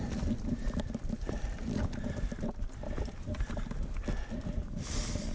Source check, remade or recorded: recorded